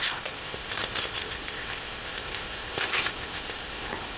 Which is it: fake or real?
fake